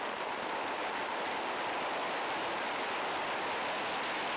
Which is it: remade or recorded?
recorded